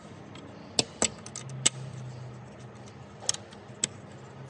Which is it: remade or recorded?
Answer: recorded